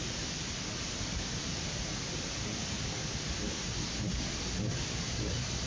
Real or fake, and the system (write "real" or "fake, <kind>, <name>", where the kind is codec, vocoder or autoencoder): real